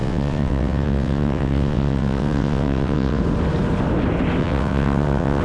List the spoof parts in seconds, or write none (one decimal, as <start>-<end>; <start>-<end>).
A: 0.0-3.2; 4.4-5.4